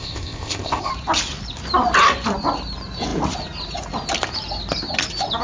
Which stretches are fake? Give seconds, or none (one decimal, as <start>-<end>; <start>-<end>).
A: 0.0-0.9